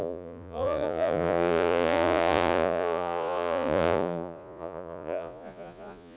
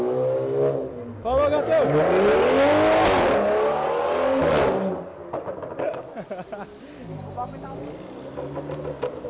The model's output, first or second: first